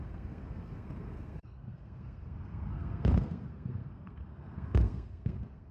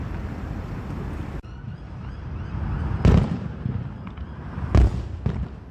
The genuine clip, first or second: second